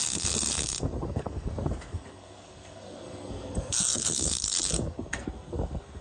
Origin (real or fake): fake